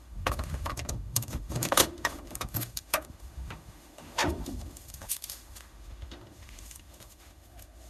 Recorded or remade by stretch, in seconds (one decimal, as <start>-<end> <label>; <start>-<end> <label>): 0.0-7.9 remade